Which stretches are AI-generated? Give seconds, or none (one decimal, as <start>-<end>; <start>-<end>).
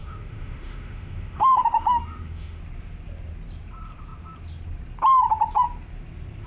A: 0.0-2.6